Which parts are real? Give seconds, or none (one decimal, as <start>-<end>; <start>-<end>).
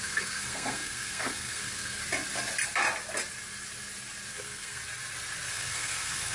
2.0-4.3; 4.8-5.5